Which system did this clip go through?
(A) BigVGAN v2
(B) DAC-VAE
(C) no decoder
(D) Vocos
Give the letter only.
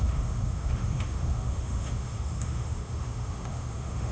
B